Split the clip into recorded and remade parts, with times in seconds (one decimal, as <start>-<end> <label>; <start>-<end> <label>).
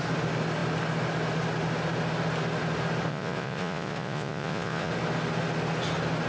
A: 0.0-3.1 recorded; 3.1-4.9 remade; 4.9-6.3 recorded